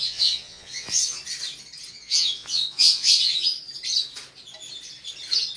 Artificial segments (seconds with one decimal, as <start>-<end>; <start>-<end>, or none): 0.0-1.2; 1.9-3.5